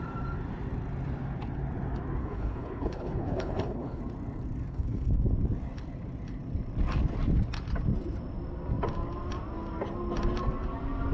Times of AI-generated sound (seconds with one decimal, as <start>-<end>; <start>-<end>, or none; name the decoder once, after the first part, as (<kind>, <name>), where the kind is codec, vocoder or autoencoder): 2.2-4.0 (codec, HILCodec); 4.7-5.3